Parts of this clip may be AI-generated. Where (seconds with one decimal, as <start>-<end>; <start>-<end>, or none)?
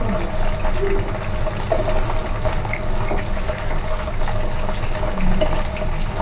2.2-6.2